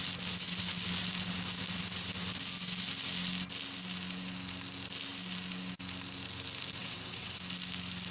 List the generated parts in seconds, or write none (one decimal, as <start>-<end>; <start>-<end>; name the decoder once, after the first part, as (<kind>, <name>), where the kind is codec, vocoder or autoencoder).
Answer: 6.8-7.3 (vocoder, WaveNeXt)